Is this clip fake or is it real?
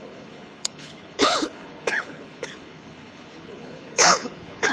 fake